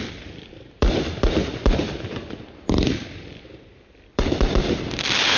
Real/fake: fake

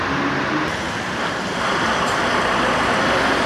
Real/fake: real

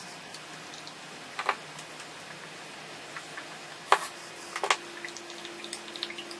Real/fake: real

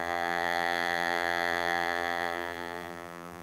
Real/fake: fake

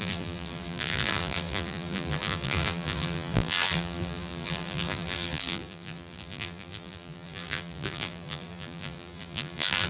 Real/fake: fake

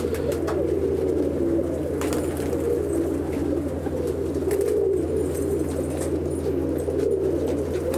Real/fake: real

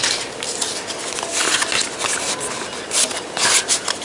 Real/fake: real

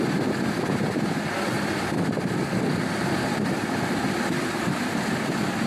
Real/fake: fake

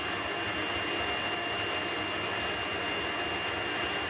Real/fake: real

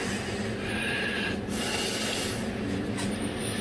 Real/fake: real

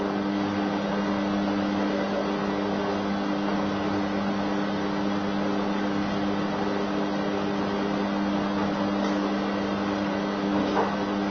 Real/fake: real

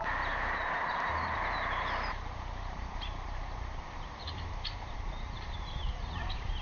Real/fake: fake